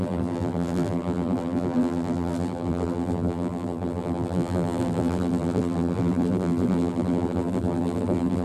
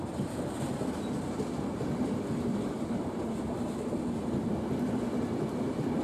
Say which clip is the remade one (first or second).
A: first